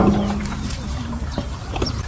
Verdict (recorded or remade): remade